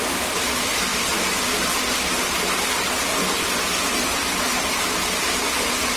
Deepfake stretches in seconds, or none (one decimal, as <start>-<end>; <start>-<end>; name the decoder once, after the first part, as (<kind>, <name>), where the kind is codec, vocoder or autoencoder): none